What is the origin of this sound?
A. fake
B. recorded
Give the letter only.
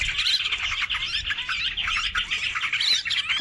B